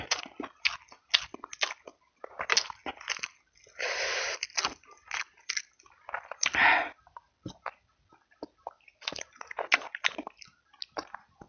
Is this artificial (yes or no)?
no